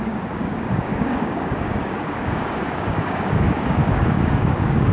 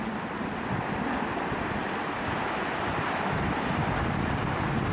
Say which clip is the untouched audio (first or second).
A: second